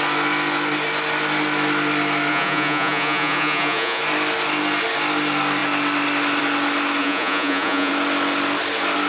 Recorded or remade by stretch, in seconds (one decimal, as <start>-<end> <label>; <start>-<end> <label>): 0.0-2.3 recorded; 2.3-4.0 remade; 4.0-7.0 recorded; 7.0-7.9 remade; 7.9-9.1 recorded